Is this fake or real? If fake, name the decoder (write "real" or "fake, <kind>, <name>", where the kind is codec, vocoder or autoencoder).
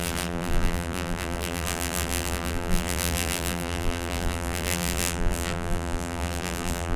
fake, vocoder, BigVGAN v2